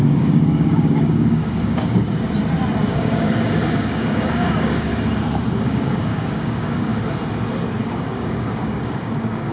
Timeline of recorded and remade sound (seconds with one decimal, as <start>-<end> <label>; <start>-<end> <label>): 0.0-2.0 remade; 2.0-2.9 recorded; 2.9-4.9 remade; 4.9-5.6 recorded; 5.6-6.9 remade; 6.9-7.8 recorded; 7.8-9.5 remade